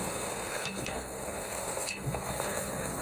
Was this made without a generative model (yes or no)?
no